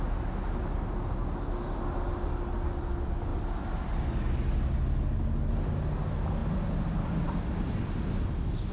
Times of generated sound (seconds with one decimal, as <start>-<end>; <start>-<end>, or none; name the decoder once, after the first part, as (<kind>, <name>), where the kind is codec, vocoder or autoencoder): none